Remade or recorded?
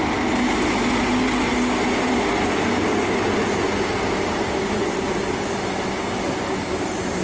recorded